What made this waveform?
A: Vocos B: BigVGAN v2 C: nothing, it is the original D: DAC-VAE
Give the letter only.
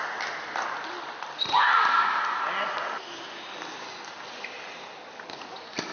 C